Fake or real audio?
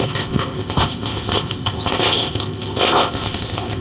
fake